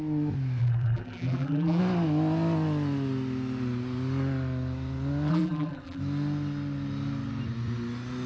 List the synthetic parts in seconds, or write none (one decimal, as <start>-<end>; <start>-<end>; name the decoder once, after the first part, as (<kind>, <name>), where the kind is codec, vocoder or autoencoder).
0.6-1.8 (vocoder, BigVGAN v2); 5.3-6.0